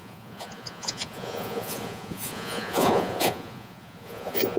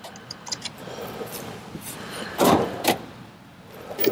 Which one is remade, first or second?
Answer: first